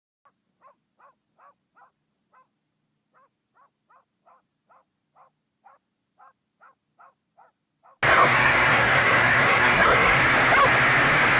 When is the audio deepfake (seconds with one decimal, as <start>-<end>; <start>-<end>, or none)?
8.1-10.2